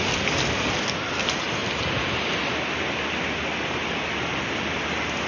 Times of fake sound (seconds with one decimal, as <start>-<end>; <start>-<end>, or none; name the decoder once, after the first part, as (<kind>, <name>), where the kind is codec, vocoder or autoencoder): none